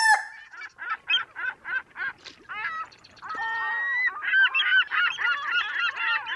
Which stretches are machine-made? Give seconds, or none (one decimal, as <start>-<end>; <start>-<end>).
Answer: none